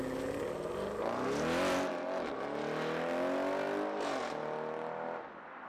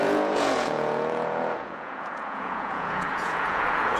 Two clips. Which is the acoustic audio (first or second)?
first